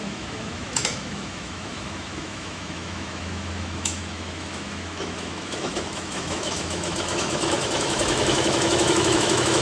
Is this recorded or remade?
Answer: remade